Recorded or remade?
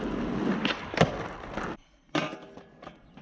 recorded